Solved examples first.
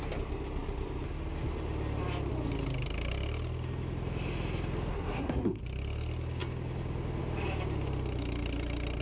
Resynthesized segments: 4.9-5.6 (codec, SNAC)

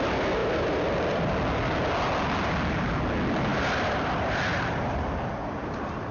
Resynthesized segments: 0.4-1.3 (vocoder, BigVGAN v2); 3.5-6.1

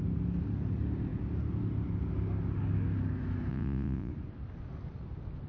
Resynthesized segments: 3.5-4.1 (vocoder, Vocos)

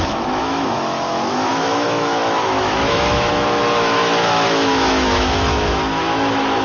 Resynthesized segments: 0.0-6.6 (autoencoder, DAC-VAE)

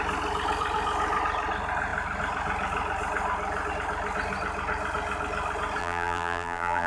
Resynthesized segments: 5.8-6.9 (vocoder, BigVGAN v2)